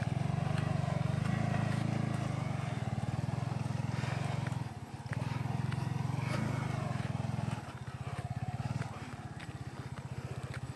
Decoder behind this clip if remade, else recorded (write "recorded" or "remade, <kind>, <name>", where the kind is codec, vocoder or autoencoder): recorded